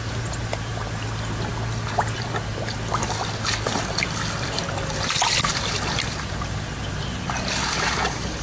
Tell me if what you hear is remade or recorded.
recorded